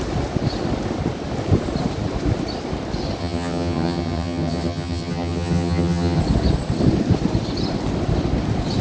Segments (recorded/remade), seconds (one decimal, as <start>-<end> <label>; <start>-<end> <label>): 0.0-3.2 recorded; 3.2-6.2 remade; 6.2-8.8 recorded

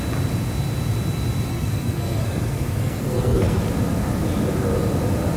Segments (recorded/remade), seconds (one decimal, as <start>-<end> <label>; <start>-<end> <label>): 0.0-1.5 recorded; 1.5-3.6 remade; 3.6-5.4 recorded

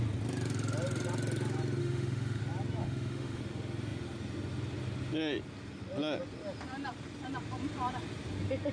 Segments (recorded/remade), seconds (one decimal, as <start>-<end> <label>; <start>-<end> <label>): 0.0-1.8 recorded; 1.8-2.4 remade; 2.4-2.8 recorded; 2.8-3.4 remade; 3.4-8.7 recorded

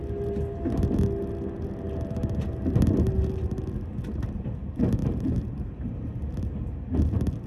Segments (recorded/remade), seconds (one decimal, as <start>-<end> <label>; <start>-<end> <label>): 0.0-5.0 recorded; 5.0-6.3 remade; 6.3-7.5 recorded

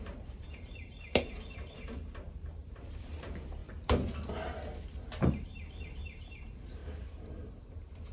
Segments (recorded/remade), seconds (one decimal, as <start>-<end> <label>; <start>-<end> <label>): 0.0-3.6 remade; 3.6-5.2 recorded; 5.2-8.1 remade

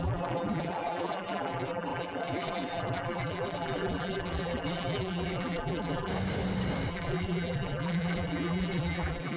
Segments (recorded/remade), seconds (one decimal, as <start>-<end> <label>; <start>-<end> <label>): 0.0-6.1 remade; 6.1-6.9 recorded; 6.9-9.4 remade